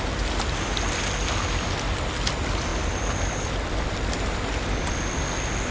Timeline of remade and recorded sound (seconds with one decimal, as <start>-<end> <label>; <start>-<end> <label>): 0.0-5.7 recorded